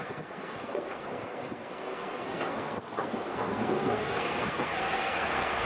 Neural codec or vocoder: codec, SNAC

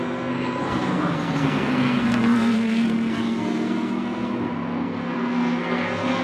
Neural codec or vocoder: codec, SNAC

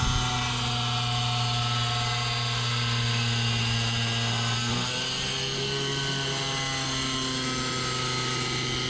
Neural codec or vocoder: none